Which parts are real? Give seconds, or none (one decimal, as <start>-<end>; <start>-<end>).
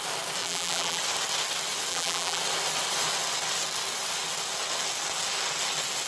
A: 0.0-0.4; 1.0-1.9; 2.4-6.1